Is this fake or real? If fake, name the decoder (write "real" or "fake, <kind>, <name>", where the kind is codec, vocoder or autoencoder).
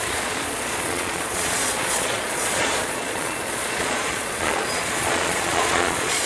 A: fake, vocoder, Vocos